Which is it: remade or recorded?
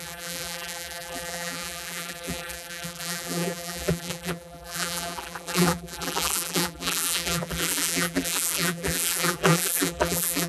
remade